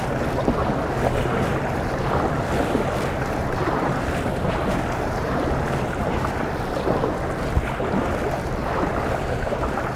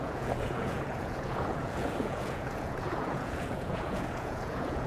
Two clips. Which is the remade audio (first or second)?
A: second